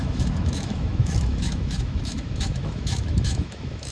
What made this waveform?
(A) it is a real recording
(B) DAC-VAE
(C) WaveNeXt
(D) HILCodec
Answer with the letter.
B